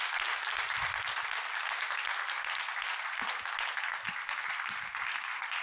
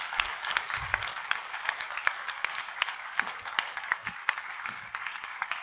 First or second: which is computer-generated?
second